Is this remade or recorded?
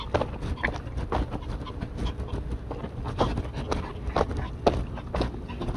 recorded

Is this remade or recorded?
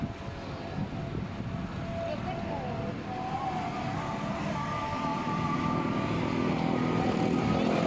recorded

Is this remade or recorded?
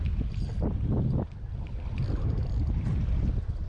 recorded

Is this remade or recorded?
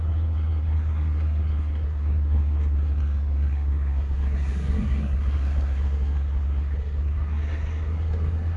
remade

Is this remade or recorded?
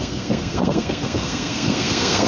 remade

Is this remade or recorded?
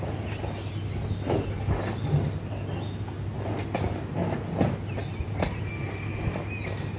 recorded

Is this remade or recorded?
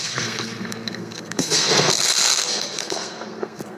remade